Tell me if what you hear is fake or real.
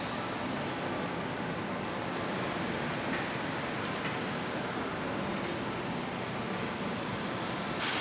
real